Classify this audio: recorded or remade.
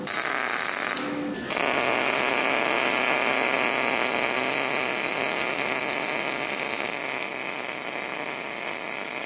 recorded